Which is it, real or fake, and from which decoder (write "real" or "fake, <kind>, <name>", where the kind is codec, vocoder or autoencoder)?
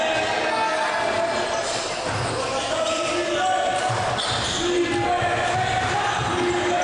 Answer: real